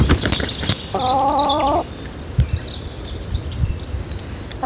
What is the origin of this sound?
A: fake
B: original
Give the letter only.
A